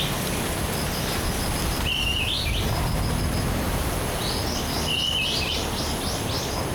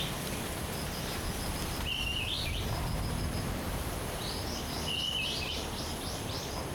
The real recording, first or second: first